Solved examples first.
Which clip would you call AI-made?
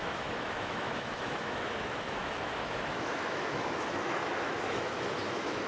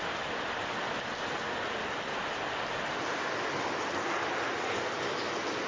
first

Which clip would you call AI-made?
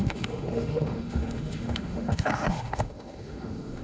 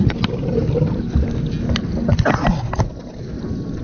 first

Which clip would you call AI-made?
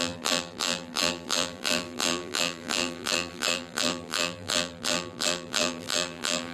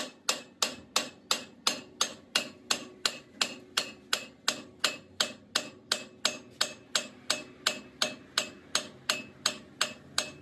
first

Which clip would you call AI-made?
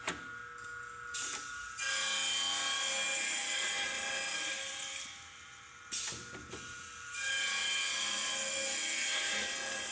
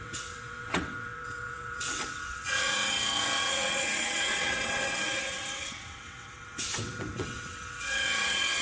second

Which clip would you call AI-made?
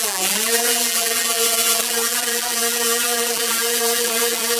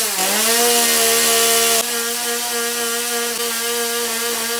first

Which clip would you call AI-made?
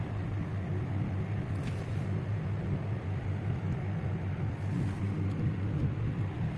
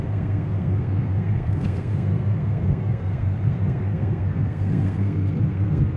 second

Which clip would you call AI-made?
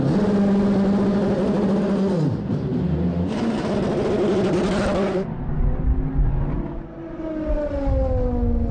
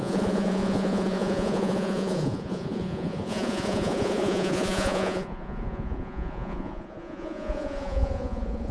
second